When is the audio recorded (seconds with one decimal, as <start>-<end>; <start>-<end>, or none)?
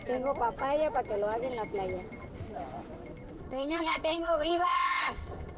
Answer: 0.0-3.4